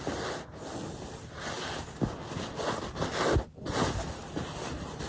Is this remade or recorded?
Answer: recorded